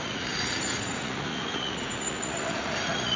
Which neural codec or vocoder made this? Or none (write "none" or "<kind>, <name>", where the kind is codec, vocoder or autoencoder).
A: vocoder, Vocos